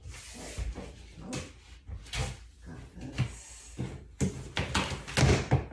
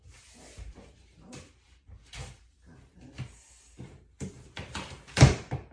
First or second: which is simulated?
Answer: second